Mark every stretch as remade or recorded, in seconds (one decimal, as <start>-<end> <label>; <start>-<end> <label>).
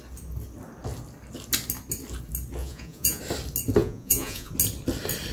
0.0-2.6 recorded; 2.6-3.2 remade; 3.2-3.8 recorded; 3.8-4.5 remade; 4.5-5.3 recorded